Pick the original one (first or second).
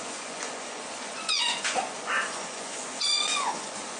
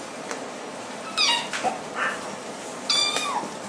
second